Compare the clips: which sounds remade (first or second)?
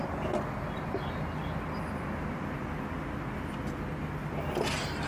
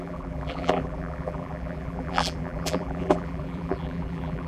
second